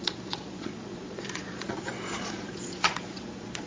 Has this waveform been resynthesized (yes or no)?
yes